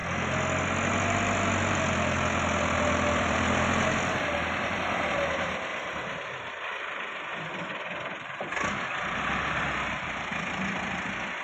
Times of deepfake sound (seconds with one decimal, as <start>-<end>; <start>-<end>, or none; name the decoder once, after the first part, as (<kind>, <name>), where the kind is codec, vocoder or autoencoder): 1.7-5.7 (vocoder, BigVGAN v2); 6.9-10.3